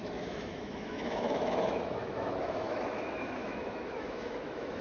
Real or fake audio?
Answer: fake